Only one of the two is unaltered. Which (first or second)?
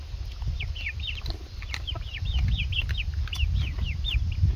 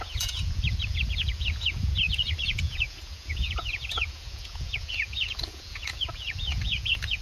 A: first